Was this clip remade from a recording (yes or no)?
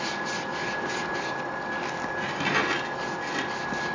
no